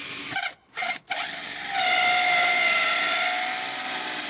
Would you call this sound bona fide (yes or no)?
yes